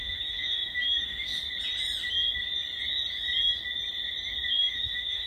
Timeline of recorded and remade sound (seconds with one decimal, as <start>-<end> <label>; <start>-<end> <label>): 0.0-1.3 remade; 1.3-4.5 recorded; 4.5-5.3 remade